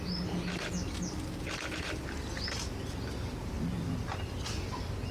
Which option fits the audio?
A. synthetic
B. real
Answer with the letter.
B